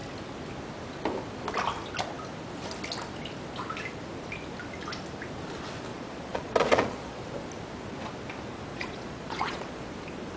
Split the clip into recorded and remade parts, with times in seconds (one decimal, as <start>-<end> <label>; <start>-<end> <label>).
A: 0.0-5.9 recorded; 5.9-7.2 remade; 7.2-8.7 recorded; 8.7-9.9 remade; 9.9-10.4 recorded